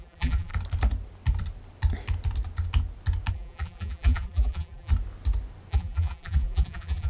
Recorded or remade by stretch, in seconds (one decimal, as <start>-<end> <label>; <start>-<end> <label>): 0.0-0.5 remade; 0.5-3.3 recorded; 3.3-4.9 remade; 4.9-5.7 recorded; 5.7-7.1 remade